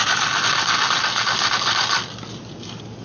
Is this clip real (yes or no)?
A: yes